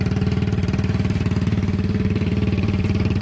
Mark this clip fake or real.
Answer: fake